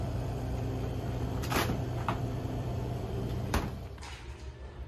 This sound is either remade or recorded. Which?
remade